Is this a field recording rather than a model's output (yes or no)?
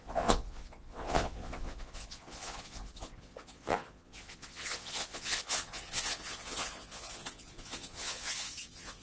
no